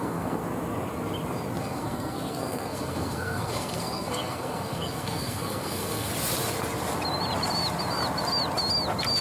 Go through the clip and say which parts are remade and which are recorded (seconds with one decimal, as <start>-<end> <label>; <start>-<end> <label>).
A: 0.0-0.4 remade; 0.4-1.6 recorded; 1.6-6.1 remade; 6.1-9.2 recorded

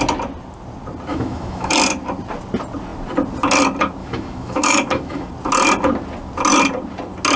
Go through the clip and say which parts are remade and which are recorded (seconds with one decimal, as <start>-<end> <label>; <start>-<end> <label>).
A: 0.0-1.1 recorded; 1.1-1.7 remade; 1.7-4.0 recorded; 4.0-5.3 remade; 5.3-7.4 recorded

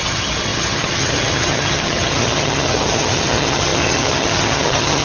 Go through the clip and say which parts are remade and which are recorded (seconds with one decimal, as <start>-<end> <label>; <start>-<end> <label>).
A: 0.0-5.0 remade

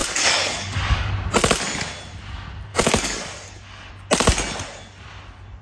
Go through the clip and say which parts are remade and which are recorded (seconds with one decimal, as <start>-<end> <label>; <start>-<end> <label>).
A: 0.0-1.1 remade; 1.1-2.7 recorded; 2.7-3.9 remade; 3.9-5.6 recorded

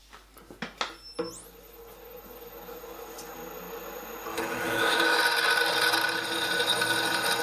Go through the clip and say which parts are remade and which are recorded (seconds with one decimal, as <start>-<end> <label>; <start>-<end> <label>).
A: 0.0-4.3 recorded; 4.3-5.2 remade; 5.2-7.4 recorded